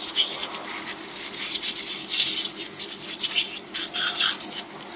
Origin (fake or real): real